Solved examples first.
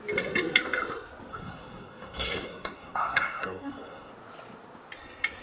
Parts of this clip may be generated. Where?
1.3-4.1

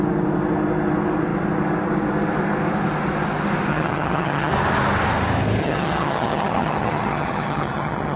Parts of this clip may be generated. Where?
3.7-4.5; 5.6-8.2

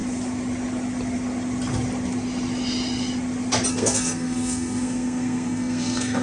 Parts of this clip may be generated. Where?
3.7-6.2

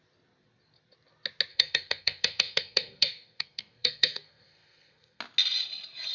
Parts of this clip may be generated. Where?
1.5-5.2

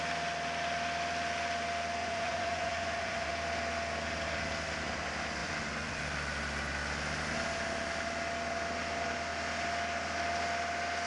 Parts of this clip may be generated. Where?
2.0-3.3; 5.4-6.0